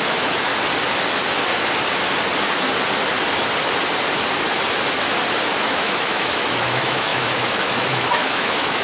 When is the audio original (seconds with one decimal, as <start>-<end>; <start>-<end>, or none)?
0.5-5.4